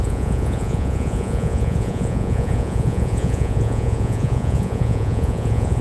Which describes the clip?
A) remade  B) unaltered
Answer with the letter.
A